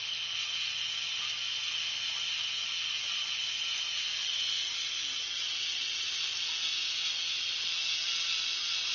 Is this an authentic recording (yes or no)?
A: yes